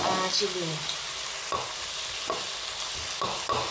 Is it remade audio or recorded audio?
recorded